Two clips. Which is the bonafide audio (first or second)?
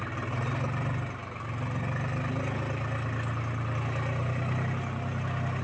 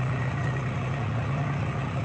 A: first